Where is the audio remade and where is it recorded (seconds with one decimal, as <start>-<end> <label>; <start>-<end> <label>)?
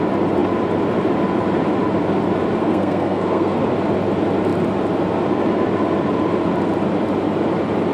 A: 0.0-2.6 recorded; 2.6-3.6 remade; 3.6-7.9 recorded